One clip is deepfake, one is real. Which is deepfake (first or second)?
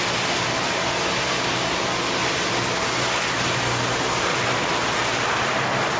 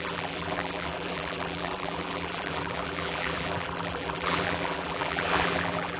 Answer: second